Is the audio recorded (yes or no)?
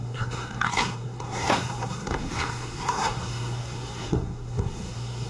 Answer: no